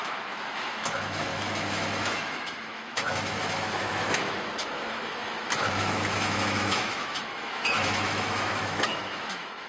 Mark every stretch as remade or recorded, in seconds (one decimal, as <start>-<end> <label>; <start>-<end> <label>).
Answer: 0.0-9.7 remade